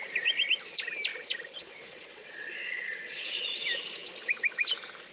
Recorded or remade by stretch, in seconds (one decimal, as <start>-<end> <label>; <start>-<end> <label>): 0.0-1.1 recorded; 1.1-3.6 remade; 3.6-5.1 recorded